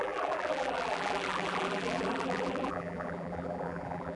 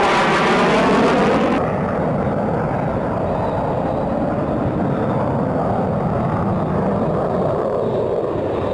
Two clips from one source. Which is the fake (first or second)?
first